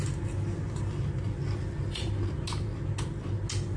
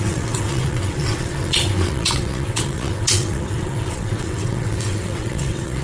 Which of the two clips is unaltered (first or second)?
first